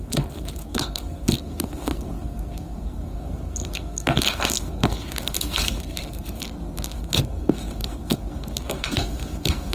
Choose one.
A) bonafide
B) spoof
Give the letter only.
B